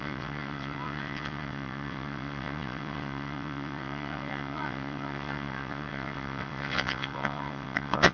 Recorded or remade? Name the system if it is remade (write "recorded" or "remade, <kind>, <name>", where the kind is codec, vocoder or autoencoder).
remade, vocoder, WaveNeXt